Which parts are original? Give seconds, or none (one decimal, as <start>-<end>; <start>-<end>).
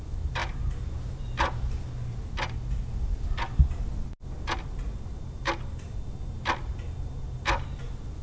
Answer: 0.0-8.2